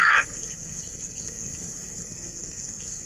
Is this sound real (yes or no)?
no